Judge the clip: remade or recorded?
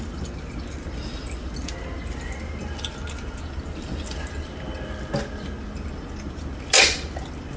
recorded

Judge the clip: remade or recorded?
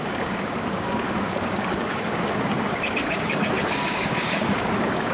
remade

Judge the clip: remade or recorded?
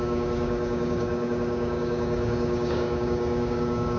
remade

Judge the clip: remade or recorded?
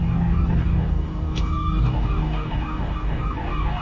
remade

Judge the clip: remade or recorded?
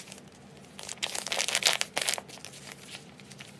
recorded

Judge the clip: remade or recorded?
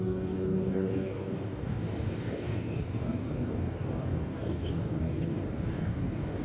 remade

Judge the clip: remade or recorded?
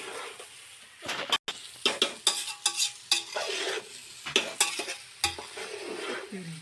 recorded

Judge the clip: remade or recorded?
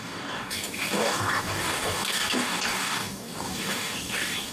remade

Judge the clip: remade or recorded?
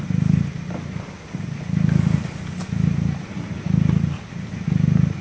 recorded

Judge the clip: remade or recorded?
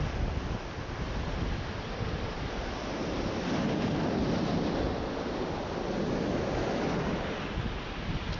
recorded